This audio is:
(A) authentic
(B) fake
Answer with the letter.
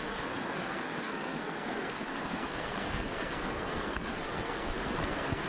B